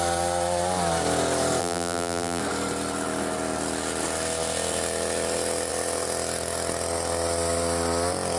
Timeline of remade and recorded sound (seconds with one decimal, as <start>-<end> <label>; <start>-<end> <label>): 0.0-1.6 recorded; 1.6-2.4 remade; 2.4-8.4 recorded